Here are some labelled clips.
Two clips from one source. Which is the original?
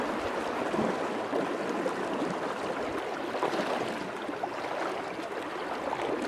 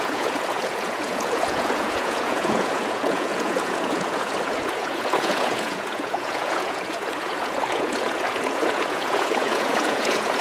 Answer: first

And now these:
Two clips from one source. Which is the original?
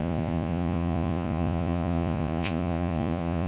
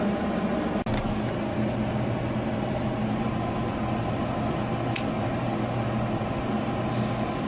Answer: second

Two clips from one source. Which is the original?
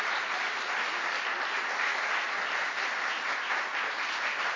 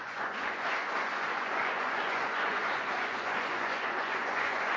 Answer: first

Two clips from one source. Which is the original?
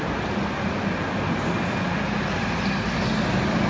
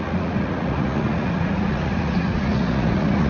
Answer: first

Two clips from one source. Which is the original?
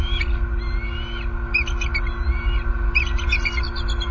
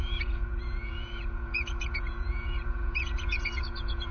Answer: first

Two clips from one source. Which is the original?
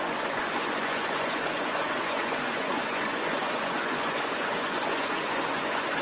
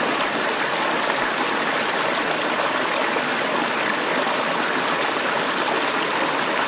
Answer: second